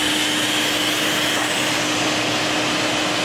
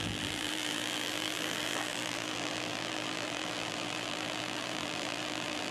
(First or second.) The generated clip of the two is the second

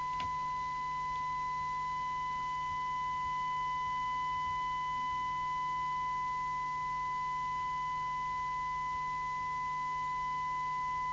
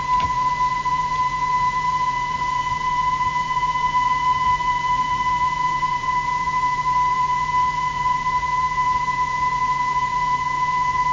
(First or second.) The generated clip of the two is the second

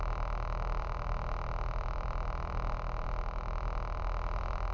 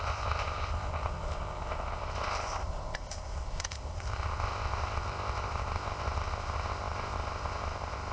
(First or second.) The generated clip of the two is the second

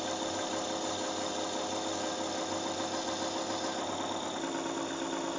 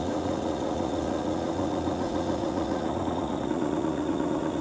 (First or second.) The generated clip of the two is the second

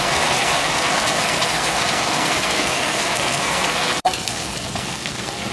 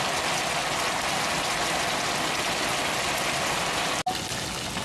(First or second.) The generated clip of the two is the first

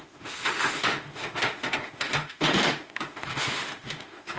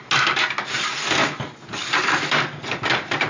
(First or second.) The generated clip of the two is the first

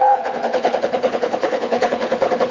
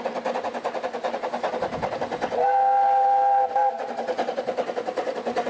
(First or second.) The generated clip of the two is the first